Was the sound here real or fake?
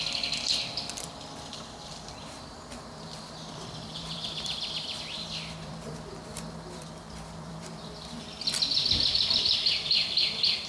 fake